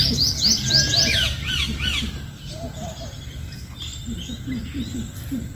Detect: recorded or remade recorded